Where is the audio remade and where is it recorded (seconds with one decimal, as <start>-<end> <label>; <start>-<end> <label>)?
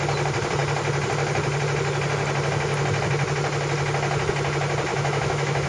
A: 0.0-4.9 recorded; 4.9-5.7 remade